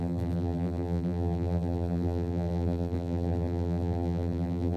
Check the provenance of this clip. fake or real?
fake